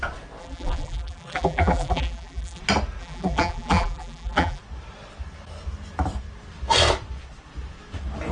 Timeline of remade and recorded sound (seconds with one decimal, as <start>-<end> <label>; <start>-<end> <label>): 0.0-0.4 recorded; 0.4-2.6 remade; 2.6-3.0 recorded; 3.0-4.6 remade; 4.6-8.3 recorded